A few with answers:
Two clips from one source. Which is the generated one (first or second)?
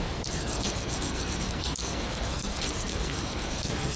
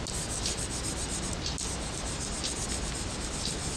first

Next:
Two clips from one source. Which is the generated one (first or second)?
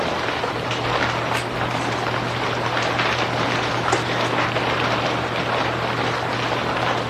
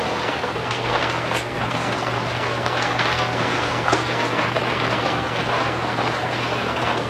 second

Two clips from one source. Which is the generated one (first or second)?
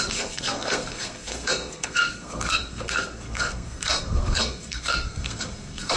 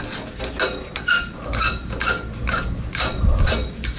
first